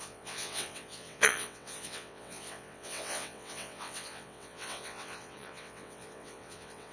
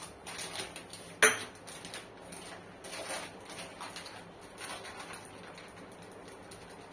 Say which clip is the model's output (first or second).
first